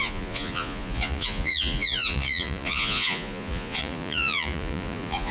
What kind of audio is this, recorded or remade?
remade